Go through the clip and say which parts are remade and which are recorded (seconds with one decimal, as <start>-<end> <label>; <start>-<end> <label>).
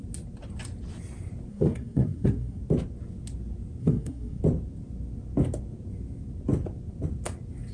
0.0-1.5 recorded; 1.5-2.6 remade; 2.6-3.8 recorded; 3.8-4.4 remade; 4.4-7.7 recorded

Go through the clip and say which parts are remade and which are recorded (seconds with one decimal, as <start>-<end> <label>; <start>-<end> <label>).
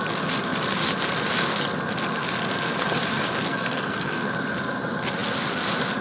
0.0-3.5 recorded; 3.5-4.3 remade; 4.3-6.0 recorded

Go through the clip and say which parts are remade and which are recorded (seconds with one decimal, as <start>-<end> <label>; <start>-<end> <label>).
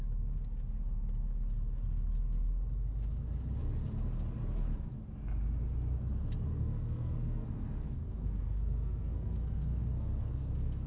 0.0-6.5 recorded; 6.5-10.9 remade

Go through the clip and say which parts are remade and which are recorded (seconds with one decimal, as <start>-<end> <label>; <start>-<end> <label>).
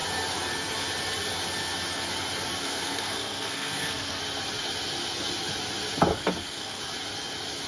0.0-2.6 recorded; 2.6-4.2 remade; 4.2-6.1 recorded; 6.1-6.8 remade; 6.8-7.7 recorded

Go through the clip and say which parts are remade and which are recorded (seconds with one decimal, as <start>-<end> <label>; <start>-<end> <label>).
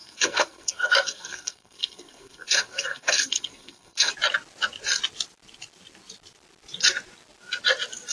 0.0-4.1 remade; 4.1-8.1 recorded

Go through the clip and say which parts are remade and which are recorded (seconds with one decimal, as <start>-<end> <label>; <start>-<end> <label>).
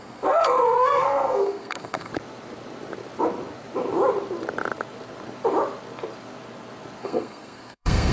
0.0-2.1 remade; 2.1-7.0 recorded; 7.0-8.1 remade